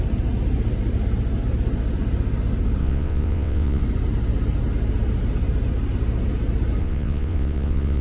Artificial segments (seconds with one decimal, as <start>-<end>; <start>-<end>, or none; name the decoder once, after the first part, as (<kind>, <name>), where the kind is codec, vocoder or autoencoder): 2.8-3.8 (vocoder, WaveNeXt); 6.8-8.0